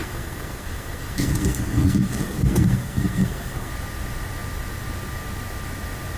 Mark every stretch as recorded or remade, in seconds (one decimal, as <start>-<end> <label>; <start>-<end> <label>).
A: 0.0-3.7 remade; 3.7-6.2 recorded

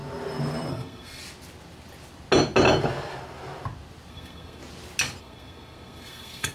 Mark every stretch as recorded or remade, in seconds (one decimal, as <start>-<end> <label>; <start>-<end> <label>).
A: 0.0-0.7 recorded; 0.7-1.2 remade; 1.2-4.1 recorded; 4.1-4.6 remade; 4.6-5.2 recorded; 5.2-6.5 remade

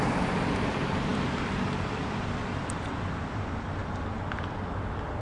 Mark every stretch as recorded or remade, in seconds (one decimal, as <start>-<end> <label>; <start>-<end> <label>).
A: 0.0-3.8 remade; 3.8-4.4 recorded; 4.4-5.2 remade

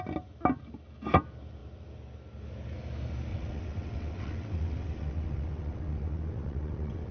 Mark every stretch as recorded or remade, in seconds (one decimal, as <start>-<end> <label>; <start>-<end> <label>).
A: 0.0-3.3 recorded; 3.3-7.1 remade

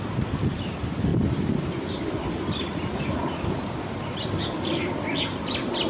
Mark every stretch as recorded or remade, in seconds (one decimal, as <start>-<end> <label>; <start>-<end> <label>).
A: 0.0-1.1 recorded; 1.1-4.6 remade; 4.6-5.9 recorded

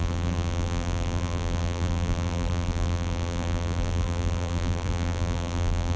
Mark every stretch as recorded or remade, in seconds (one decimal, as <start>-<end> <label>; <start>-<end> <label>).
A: 0.0-6.0 remade